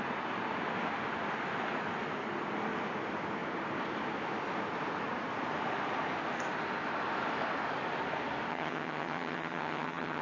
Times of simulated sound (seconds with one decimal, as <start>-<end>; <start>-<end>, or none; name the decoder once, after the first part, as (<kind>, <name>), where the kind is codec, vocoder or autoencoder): 8.5-10.2 (vocoder, HiFi-GAN)